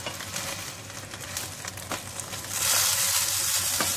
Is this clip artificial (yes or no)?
no